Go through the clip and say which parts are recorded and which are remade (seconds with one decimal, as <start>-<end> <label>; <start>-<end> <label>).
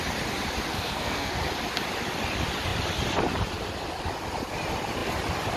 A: 0.0-0.7 recorded; 0.7-1.4 remade; 1.4-5.6 recorded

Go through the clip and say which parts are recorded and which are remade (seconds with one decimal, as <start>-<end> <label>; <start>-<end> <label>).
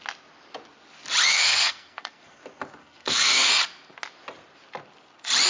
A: 0.0-1.3 recorded; 1.3-2.4 remade; 2.4-2.8 recorded; 2.8-3.5 remade; 3.5-5.5 recorded